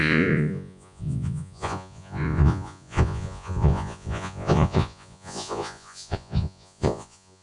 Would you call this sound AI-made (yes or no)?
yes